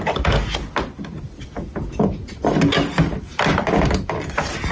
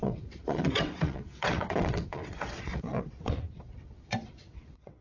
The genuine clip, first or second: first